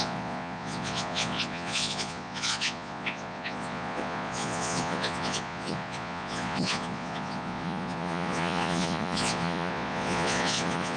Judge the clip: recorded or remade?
remade